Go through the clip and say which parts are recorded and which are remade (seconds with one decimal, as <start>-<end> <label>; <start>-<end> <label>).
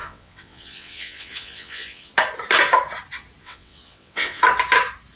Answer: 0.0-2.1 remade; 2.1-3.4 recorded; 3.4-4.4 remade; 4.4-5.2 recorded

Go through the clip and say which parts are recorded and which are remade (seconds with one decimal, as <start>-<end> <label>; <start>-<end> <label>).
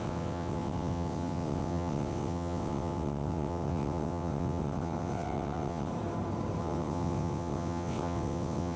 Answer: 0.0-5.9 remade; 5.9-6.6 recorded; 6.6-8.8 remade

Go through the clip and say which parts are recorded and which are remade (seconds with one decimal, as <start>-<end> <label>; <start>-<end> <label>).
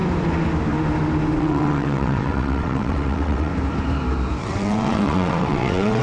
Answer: 0.0-1.4 recorded; 1.4-3.5 remade; 3.5-4.4 recorded; 4.4-6.0 remade